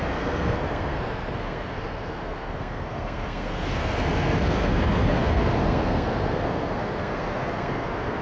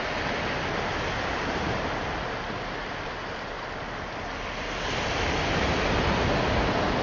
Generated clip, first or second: first